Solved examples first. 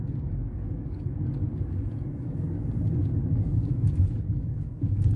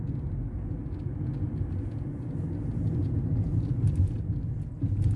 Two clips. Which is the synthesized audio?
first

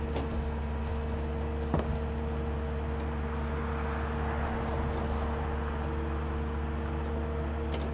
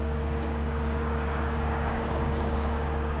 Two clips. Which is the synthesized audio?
second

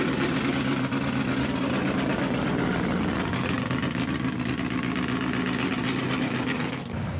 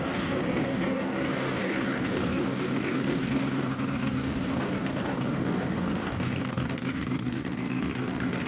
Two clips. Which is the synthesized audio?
second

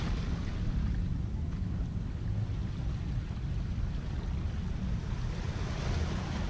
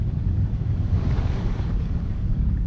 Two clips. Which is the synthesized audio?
second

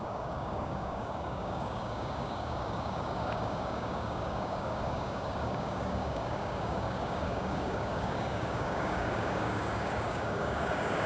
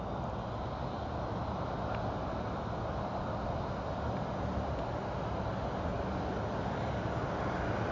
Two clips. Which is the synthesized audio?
first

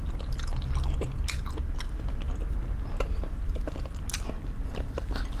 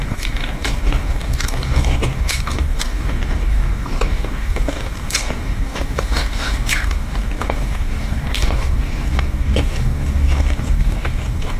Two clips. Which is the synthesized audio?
second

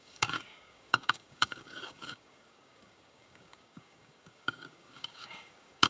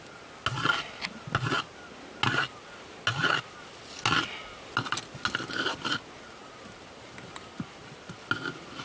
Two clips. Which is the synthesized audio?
first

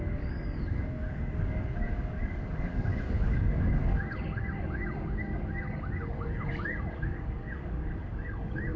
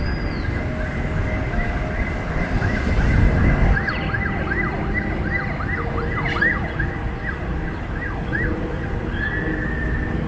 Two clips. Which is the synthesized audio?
first